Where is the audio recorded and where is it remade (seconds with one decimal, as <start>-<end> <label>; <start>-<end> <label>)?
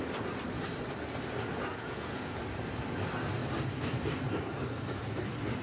0.0-1.7 recorded; 1.7-2.4 remade; 2.4-5.6 recorded